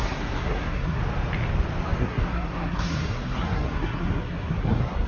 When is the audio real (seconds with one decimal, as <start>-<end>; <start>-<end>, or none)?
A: 1.0-2.0